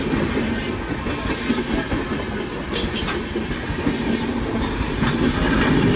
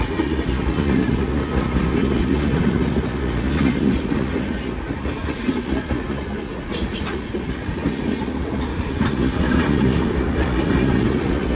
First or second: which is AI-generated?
second